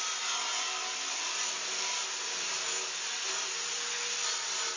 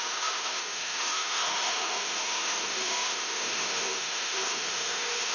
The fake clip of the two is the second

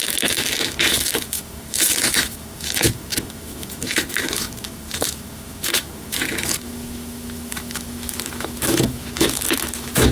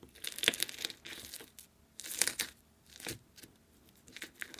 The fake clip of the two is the first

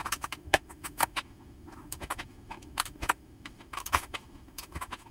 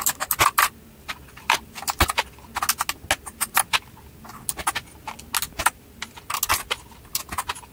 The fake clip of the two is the first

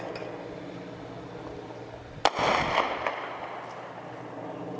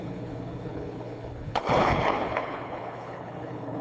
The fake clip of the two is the second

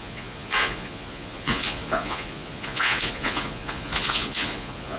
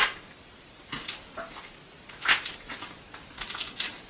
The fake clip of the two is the first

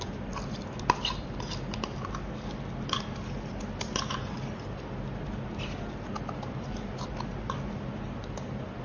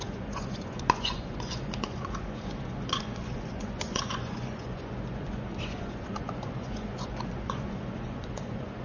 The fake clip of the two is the second